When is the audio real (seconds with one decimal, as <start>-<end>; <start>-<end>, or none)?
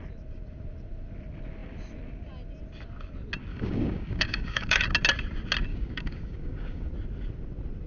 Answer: 0.0-3.5; 4.8-5.7; 6.9-7.9